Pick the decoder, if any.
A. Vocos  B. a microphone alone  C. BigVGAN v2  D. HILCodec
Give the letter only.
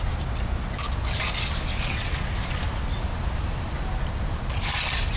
B